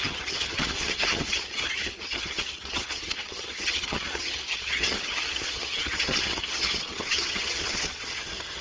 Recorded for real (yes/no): no